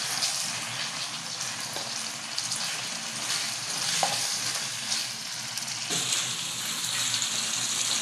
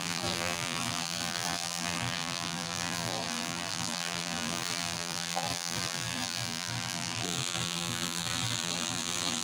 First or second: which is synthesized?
second